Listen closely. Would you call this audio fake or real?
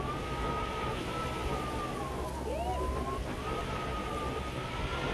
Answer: real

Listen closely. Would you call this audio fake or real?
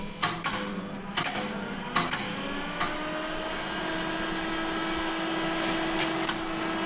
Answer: real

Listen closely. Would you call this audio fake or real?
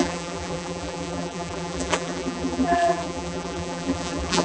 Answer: fake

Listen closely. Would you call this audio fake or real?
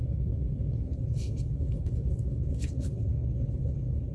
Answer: fake